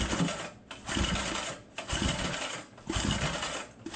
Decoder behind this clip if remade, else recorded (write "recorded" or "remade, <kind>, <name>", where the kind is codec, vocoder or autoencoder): recorded